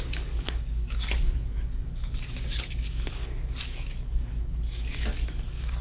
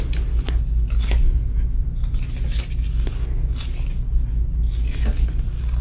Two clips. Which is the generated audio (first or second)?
first